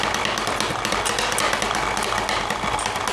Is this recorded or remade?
recorded